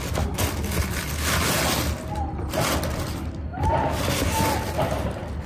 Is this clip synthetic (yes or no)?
no